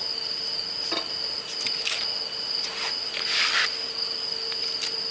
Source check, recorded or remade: recorded